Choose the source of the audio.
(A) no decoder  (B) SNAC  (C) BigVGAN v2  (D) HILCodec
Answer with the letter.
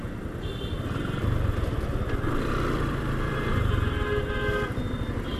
A